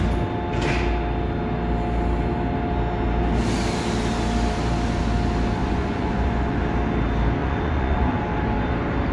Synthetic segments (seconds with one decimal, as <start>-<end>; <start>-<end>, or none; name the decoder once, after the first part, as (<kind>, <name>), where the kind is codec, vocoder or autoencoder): 5.6-6.6 (vocoder, Vocos); 7.4-8.2